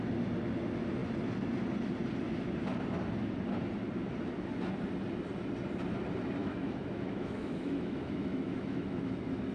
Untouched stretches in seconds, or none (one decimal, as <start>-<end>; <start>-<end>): 0.0-6.4; 9.1-9.5